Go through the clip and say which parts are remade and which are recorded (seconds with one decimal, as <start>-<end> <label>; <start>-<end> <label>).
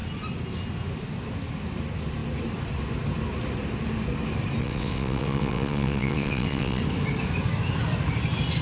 0.0-4.6 recorded; 4.6-6.8 remade; 6.8-8.6 recorded